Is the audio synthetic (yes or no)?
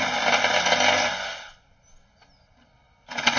no